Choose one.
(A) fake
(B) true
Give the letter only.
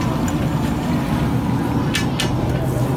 B